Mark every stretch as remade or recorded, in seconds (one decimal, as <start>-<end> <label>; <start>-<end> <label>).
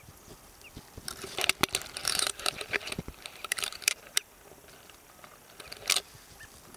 0.0-2.0 recorded; 2.0-4.3 remade; 4.3-6.8 recorded